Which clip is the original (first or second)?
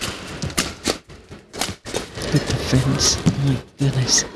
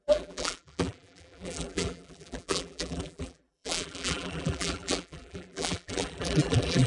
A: first